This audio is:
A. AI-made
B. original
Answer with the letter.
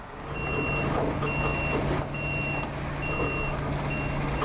B